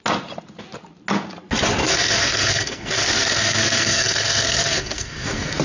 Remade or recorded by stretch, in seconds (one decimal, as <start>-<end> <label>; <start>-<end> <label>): 0.0-1.8 recorded; 1.8-5.6 remade